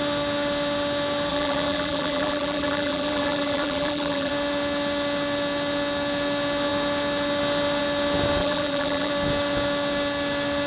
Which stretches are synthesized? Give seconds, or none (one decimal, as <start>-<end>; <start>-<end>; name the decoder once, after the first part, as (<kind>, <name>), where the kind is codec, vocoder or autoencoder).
1.3-4.3 (vocoder, BigVGAN v2); 8.4-9.1